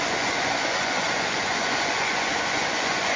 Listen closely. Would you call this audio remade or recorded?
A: remade